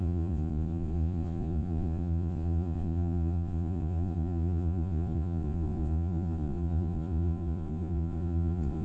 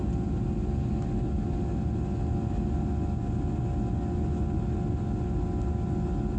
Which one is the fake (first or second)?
first